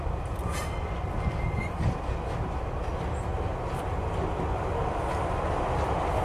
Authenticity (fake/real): real